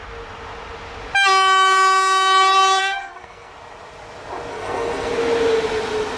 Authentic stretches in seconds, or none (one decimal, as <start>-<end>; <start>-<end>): 0.0-2.8; 3.5-4.5; 5.1-6.2